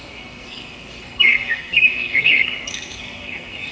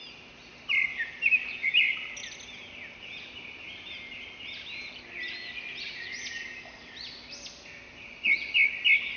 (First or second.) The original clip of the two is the second